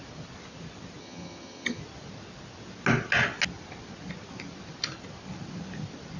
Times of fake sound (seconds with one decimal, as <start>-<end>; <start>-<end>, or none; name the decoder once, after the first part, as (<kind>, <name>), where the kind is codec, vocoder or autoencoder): 1.0-1.8 (vocoder, HiFi-GAN)